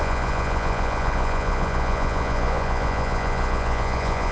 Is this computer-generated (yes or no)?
yes